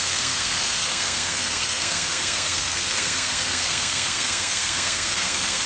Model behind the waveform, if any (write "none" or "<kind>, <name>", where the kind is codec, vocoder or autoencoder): codec, SNAC